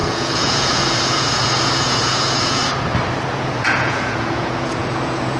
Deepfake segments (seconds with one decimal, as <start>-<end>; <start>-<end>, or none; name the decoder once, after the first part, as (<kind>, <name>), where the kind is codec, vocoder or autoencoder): 0.0-2.6 (vocoder, Vocos); 3.3-5.4